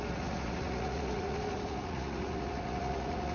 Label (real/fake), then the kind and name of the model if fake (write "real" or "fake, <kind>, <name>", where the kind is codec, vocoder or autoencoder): fake, vocoder, Vocos